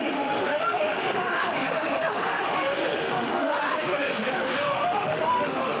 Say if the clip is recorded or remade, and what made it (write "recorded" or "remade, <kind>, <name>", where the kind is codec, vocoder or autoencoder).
remade, autoencoder, DAC-VAE